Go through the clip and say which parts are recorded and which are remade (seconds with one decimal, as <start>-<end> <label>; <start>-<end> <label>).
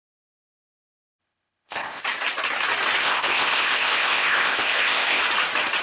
0.0-1.2 recorded; 1.2-2.0 remade; 2.0-3.0 recorded; 3.0-5.2 remade; 5.2-5.8 recorded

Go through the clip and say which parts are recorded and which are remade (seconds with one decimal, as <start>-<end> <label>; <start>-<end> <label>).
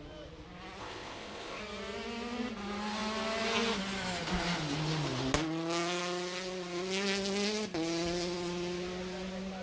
0.0-0.8 recorded; 0.8-1.6 remade; 1.6-9.6 recorded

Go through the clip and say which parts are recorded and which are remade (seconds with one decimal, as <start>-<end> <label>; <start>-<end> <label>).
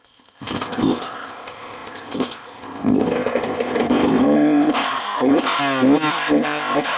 0.0-5.6 remade; 5.6-6.1 recorded; 6.1-7.0 remade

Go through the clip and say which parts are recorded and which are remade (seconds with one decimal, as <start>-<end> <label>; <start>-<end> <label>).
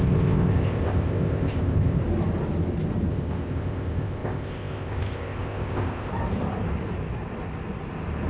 0.0-2.0 remade; 2.0-3.1 recorded; 3.1-6.1 remade; 6.1-8.3 recorded